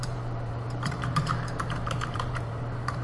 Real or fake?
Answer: fake